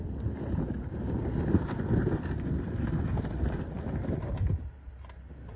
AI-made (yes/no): no